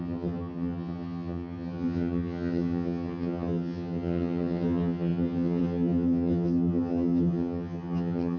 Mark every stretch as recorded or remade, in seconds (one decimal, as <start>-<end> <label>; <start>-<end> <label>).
0.0-8.4 remade